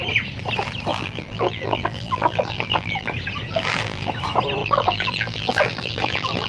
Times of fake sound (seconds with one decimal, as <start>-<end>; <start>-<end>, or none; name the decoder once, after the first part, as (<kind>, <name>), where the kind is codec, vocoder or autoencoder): 0.9-3.1 (vocoder, BigVGAN v2); 3.5-4.1; 4.6-6.5